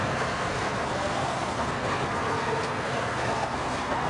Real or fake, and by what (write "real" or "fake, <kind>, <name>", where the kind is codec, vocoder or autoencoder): fake, codec, SNAC